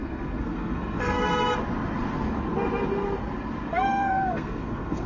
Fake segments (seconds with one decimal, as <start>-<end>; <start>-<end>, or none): 0.0-1.2; 3.7-5.1